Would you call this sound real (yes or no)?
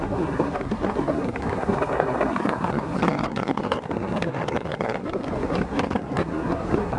no